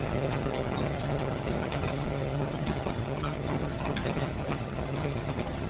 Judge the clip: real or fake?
fake